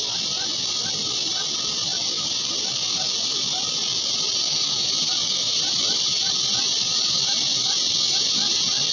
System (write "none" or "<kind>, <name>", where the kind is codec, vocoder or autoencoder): vocoder, BigVGAN v2